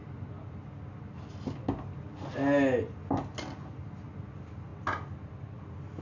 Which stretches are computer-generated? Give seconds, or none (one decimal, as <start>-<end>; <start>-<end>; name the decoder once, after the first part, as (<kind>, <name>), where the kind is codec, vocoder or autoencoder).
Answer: none